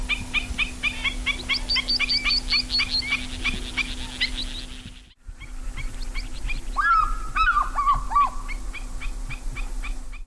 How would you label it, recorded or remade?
recorded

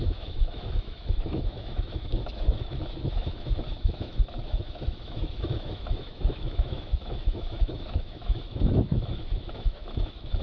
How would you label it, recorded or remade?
remade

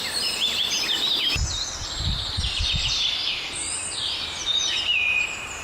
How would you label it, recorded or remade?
remade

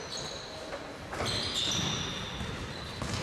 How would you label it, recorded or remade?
recorded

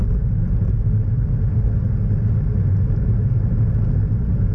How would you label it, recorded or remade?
recorded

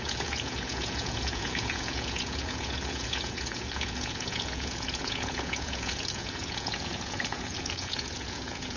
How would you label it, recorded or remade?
remade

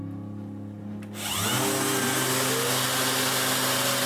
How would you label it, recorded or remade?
recorded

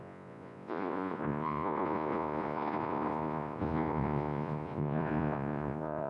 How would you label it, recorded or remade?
remade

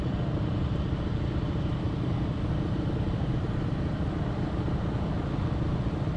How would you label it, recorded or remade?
recorded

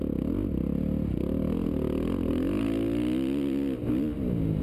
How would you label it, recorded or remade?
recorded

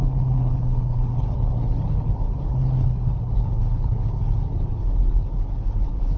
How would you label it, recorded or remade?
remade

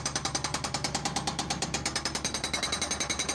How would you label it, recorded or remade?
remade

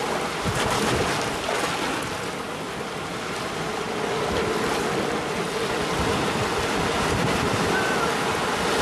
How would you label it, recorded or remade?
recorded